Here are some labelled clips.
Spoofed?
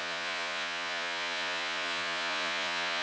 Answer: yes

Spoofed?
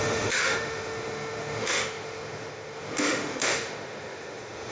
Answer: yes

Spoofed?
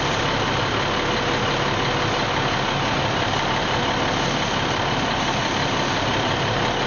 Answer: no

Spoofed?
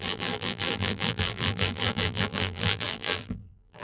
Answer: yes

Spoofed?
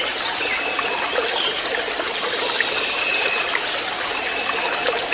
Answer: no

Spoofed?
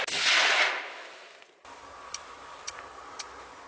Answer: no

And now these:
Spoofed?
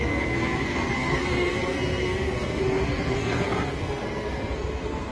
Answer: yes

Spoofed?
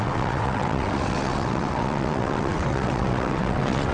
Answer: yes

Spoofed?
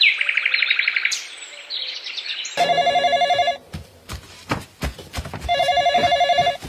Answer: yes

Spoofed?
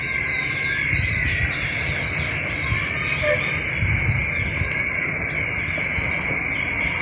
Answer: no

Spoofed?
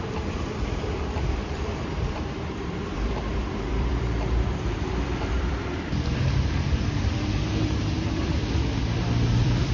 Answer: yes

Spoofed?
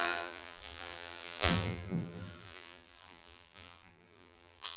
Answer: yes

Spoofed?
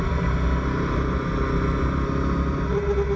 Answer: no